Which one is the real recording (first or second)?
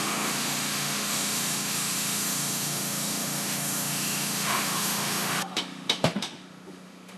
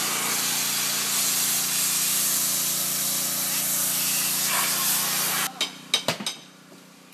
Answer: second